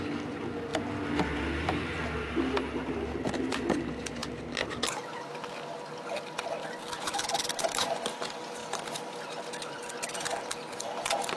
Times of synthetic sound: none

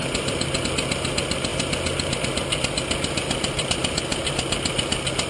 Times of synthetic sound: none

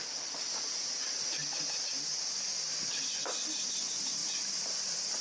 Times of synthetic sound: 0.0-5.2